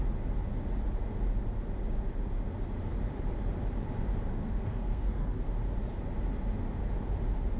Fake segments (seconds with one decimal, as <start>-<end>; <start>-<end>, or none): 4.3-5.4